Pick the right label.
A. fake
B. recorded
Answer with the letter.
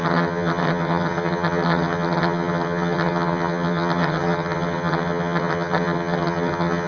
A